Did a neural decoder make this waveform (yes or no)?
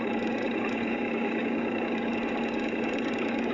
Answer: yes